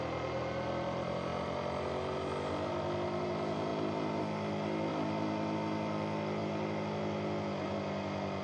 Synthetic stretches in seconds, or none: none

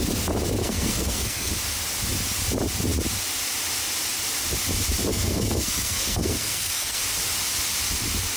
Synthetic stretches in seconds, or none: 0.6-1.5 (codec, SNAC); 5.1-7.0

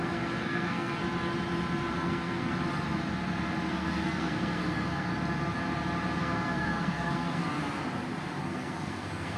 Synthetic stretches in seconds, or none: 0.0-1.0 (codec, SNAC); 1.9-2.5; 3.7-5.1; 6.2-7.6; 8.4-9.4

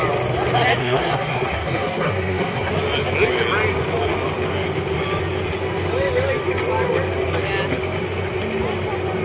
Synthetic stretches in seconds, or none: 0.8-2.7 (codec, SNAC)

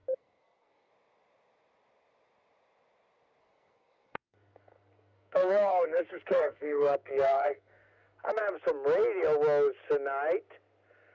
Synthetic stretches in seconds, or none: 0.0-0.9 (codec, SNAC); 3.4-8.4

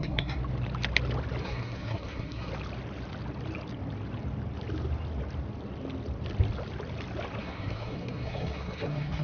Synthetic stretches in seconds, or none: 0.0-0.4 (codec, SNAC); 1.4-2.5; 7.4-9.2

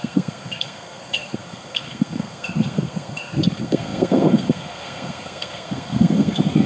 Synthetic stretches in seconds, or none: 0.0-6.7 (codec, SNAC)

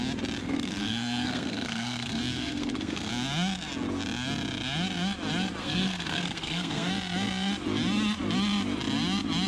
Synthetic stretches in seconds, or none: 0.4-3.1 (codec, SNAC); 5.6-6.9